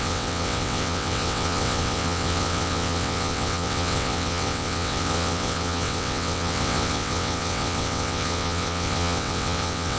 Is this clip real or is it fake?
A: fake